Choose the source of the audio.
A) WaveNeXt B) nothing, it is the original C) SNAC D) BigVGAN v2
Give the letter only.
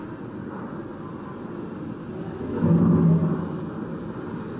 B